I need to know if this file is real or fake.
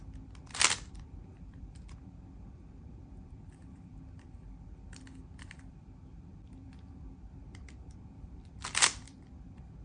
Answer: fake